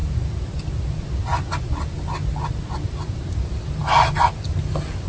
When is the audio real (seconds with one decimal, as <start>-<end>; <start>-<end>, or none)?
0.0-5.1